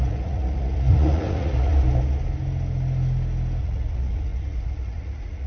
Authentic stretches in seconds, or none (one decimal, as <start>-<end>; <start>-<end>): 1.7-3.6